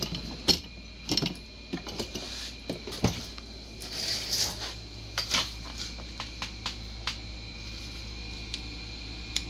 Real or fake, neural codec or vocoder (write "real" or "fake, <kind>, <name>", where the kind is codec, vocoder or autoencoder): real